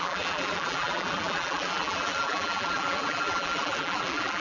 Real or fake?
fake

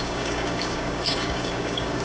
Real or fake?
fake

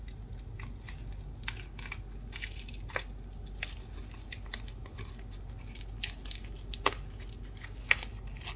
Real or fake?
real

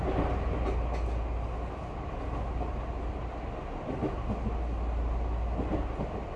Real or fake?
real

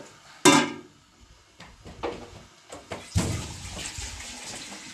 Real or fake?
real